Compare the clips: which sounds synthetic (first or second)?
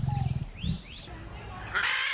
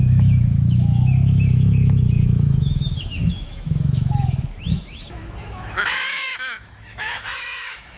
second